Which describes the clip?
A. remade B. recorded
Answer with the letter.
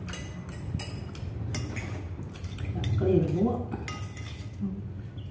B